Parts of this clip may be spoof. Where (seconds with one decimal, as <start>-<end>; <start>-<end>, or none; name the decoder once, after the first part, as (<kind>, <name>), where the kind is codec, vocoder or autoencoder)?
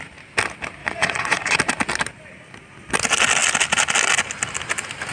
0.8-1.6 (vocoder, Vocos)